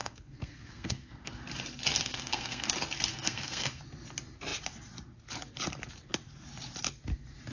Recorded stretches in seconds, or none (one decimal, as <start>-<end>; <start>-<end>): 1.4-1.9; 2.7-3.1; 3.8-7.5